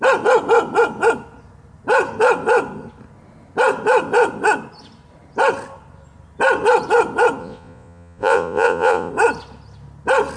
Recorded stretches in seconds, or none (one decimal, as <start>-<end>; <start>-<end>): 0.0-7.4; 9.1-10.4